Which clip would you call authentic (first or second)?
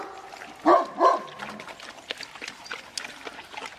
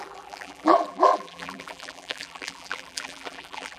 first